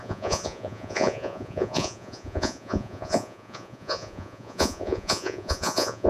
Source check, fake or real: fake